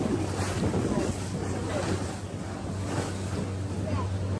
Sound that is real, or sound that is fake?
real